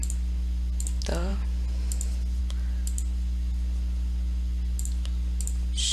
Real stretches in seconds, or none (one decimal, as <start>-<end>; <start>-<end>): 0.0-5.9